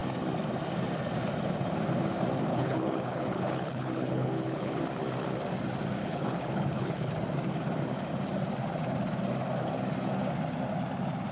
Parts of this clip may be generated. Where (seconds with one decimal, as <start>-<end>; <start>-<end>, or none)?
2.5-4.8; 6.0-7.1